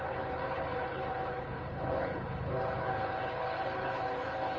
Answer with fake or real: fake